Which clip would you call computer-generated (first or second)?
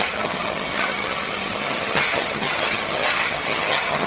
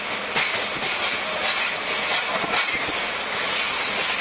first